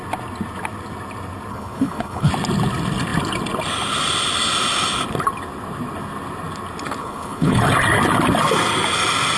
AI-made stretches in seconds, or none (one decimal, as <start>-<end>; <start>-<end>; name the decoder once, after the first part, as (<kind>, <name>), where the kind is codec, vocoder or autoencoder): 1.5-2.3 (codec, HILCodec); 7.0-7.6